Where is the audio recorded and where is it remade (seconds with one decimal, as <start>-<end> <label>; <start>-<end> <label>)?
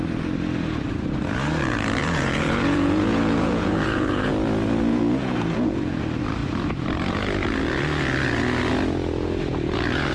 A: 0.0-2.0 recorded; 2.0-4.3 remade; 4.3-4.9 recorded; 4.9-6.0 remade; 6.0-10.1 recorded